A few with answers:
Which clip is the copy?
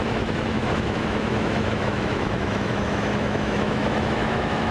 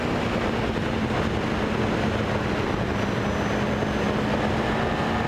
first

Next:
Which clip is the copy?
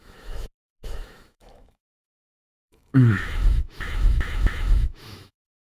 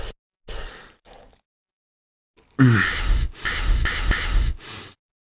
first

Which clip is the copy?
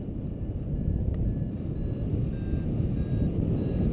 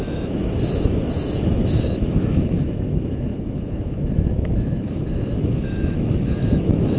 second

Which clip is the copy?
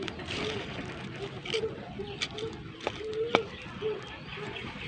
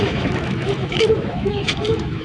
second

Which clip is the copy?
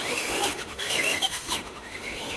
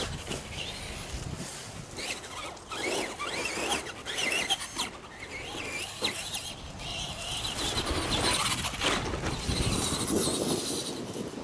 first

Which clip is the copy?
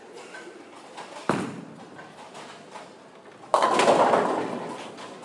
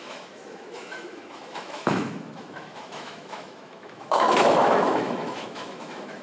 second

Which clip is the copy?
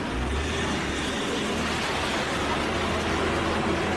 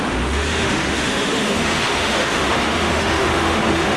second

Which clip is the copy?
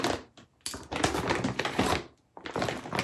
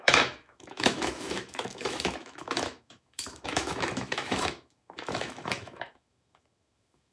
second